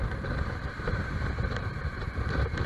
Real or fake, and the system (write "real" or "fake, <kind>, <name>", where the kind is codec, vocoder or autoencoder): fake, vocoder, BigVGAN v2